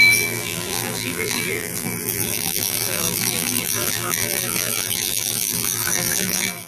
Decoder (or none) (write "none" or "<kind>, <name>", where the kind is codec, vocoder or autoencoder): vocoder, BigVGAN v2